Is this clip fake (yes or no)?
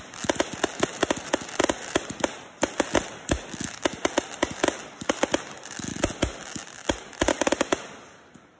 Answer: no